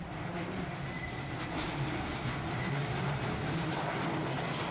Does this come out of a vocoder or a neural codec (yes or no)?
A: no